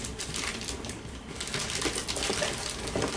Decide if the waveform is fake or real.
real